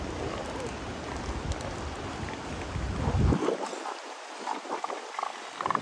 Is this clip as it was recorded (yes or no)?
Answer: yes